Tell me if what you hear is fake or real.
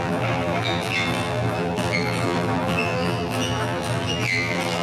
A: fake